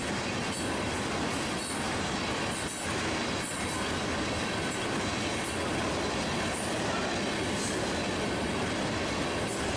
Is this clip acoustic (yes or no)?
yes